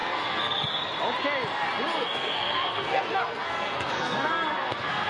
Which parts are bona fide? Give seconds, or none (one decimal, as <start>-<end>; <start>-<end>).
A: 0.8-1.9